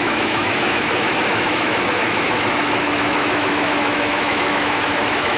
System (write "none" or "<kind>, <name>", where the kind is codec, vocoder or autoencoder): autoencoder, DAC-VAE